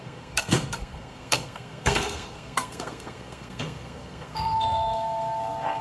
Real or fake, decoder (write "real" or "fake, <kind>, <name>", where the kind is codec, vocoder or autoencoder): fake, codec, SNAC